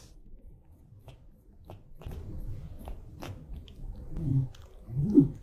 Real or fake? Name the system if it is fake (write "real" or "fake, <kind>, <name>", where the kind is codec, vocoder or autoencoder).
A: real